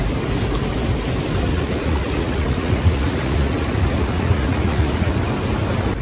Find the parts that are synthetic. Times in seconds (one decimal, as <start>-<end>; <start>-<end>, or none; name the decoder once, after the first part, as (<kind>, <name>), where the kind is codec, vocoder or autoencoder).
1.5-5.1 (vocoder, Vocos)